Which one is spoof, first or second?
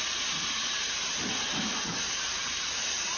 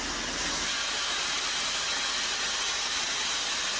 first